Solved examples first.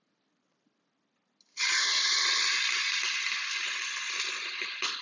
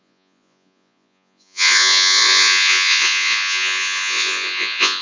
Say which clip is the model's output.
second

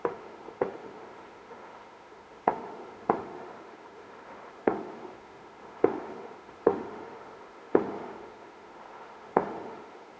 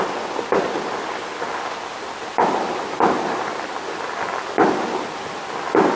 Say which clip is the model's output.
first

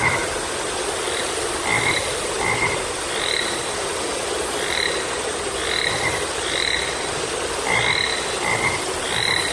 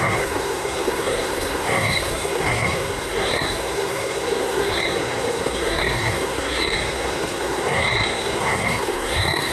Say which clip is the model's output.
second